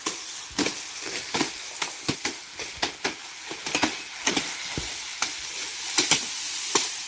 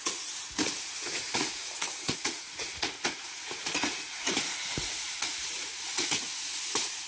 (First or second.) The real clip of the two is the first